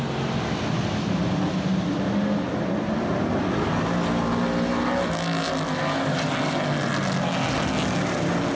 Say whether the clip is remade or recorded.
recorded